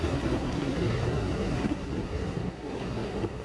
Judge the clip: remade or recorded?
remade